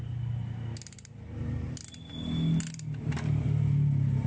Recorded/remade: recorded